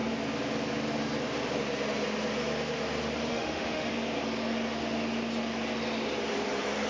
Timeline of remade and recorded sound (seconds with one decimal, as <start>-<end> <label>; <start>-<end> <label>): 0.0-3.3 recorded; 3.3-3.9 remade; 3.9-6.9 recorded

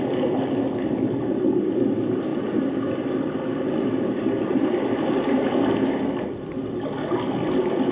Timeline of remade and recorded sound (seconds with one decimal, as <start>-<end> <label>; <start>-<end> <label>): 0.0-7.9 recorded

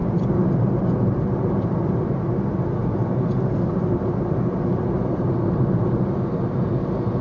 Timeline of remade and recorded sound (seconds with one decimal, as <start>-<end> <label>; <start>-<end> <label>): 0.0-7.2 recorded

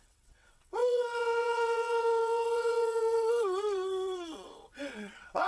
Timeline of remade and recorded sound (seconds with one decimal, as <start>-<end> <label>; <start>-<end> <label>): 0.0-5.5 remade

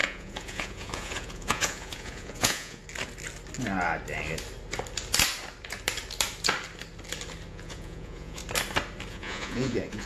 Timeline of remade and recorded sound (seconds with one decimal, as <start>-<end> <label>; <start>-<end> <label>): 0.0-2.8 remade; 2.8-7.5 recorded; 7.5-8.4 remade; 8.4-9.1 recorded; 9.1-10.1 remade

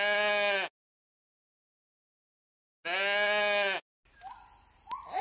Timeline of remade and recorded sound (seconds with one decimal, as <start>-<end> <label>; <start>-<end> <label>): 0.0-5.2 recorded

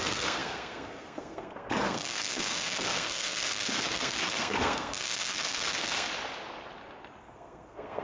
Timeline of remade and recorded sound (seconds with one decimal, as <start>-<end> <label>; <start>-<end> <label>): 0.0-6.1 remade; 6.1-7.2 recorded; 7.2-8.0 remade

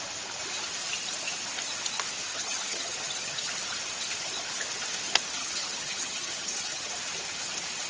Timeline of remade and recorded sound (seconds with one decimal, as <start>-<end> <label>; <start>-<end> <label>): 0.0-2.3 recorded; 2.3-3.5 remade; 3.5-5.4 recorded; 5.4-6.9 remade; 6.9-7.9 recorded